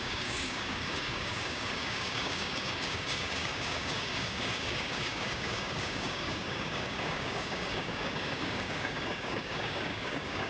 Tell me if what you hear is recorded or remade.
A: remade